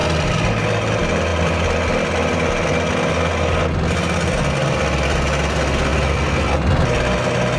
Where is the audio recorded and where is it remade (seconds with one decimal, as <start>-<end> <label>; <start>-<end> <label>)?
0.0-7.6 recorded